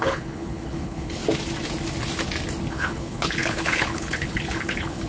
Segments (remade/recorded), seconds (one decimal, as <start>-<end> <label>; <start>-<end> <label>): 0.0-1.2 remade; 1.2-2.7 recorded; 2.7-5.1 remade